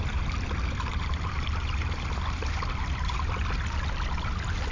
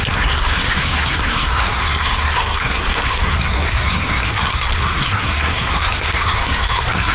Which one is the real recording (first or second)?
first